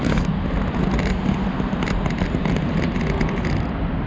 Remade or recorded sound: recorded